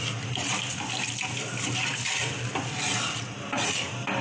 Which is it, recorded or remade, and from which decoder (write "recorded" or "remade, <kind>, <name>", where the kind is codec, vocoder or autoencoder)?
recorded